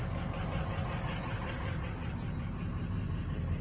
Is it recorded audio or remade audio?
recorded